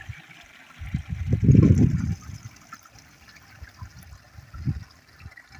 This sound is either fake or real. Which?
real